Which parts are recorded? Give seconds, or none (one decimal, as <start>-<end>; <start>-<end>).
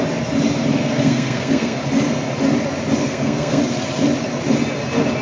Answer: 0.0-0.8; 1.8-3.0; 3.6-5.2